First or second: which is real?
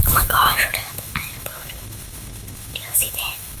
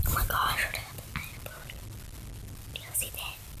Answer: second